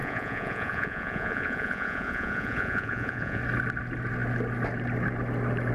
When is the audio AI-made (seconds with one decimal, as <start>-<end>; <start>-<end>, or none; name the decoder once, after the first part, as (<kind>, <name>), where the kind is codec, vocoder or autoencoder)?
0.0-3.4 (vocoder, Vocos)